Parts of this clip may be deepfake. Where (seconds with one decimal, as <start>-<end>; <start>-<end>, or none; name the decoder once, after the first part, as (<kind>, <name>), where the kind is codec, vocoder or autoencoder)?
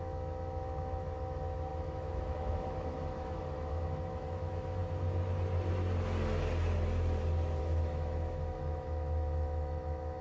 0.0-4.8 (autoencoder, DAC-VAE); 7.6-10.2